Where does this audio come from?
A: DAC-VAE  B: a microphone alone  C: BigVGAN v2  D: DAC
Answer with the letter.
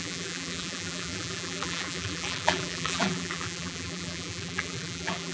C